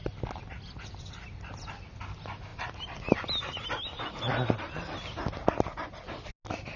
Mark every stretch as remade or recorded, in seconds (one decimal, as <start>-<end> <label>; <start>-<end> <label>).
0.0-6.8 recorded